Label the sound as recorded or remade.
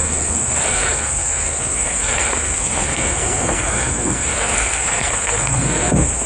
remade